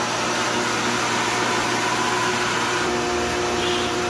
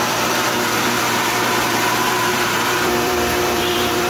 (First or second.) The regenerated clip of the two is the second